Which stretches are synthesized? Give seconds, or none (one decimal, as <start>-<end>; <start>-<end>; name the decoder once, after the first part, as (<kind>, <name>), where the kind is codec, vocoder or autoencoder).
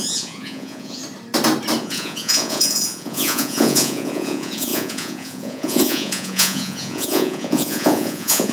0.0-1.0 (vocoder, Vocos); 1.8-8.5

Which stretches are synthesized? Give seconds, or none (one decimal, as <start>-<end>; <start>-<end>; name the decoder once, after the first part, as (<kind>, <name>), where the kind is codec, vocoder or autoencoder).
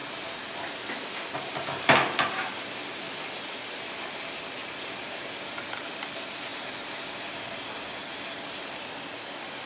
none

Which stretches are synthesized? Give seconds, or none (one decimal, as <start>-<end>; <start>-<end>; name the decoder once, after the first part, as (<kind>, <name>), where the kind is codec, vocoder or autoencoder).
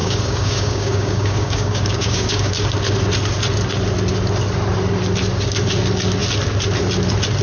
0.0-2.5 (codec, DAC)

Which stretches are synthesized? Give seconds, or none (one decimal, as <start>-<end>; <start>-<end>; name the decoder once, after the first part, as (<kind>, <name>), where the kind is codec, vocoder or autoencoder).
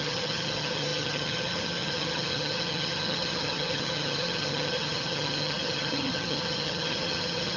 0.0-7.6 (vocoder, HiFi-GAN)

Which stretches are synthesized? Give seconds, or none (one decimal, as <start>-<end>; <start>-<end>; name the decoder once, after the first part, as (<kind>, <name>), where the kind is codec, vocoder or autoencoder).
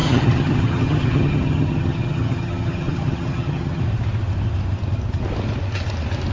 0.0-3.8 (vocoder, HiFi-GAN)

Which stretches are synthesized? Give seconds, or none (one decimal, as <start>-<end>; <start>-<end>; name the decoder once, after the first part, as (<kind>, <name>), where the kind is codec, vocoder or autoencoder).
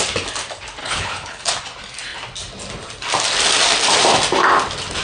0.8-1.5 (codec, HILCodec)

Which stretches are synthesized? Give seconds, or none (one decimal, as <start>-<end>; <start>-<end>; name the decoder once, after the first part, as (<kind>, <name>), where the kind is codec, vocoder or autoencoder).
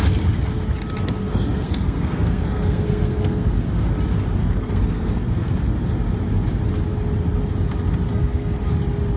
1.2-3.9 (codec, SNAC); 4.4-5.5; 8.1-8.7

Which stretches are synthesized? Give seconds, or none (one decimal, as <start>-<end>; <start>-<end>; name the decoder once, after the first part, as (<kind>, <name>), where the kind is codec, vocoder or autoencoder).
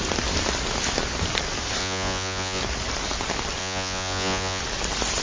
1.8-2.6 (vocoder, Vocos); 3.6-4.6